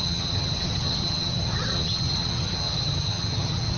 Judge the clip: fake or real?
fake